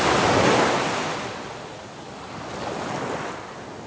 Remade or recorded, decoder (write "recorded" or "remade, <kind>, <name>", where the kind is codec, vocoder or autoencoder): recorded